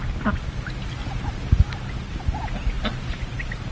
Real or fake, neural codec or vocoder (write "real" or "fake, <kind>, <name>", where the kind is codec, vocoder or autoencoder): real